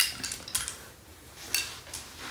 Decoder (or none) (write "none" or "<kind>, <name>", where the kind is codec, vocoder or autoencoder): none